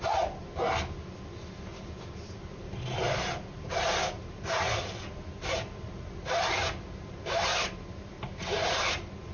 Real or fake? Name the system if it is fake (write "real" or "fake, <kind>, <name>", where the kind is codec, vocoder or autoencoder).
real